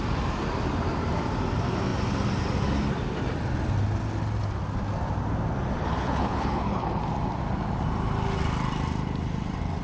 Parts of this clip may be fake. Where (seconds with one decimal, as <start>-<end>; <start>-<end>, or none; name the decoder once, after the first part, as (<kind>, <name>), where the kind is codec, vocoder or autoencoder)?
5.8-7.0 (codec, HILCodec)